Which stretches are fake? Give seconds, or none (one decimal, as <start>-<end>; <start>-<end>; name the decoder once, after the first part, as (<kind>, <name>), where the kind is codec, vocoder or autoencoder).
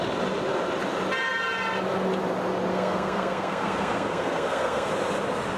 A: 2.7-4.9 (codec, SNAC)